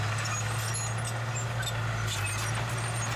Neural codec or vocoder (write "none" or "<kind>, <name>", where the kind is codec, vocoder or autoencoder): none